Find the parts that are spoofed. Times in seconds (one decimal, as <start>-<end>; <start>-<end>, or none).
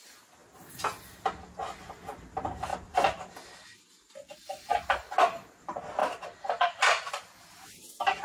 2.7-4.7